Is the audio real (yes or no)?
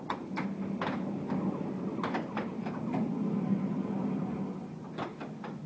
yes